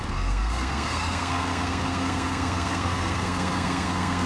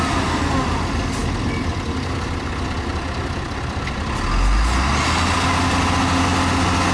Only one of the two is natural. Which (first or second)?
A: second